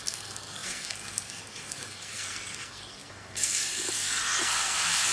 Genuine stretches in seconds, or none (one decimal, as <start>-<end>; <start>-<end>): none